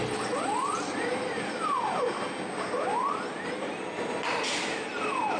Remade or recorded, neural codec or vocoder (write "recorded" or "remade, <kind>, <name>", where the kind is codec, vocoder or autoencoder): recorded